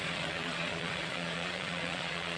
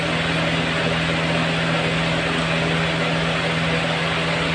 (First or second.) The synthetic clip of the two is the first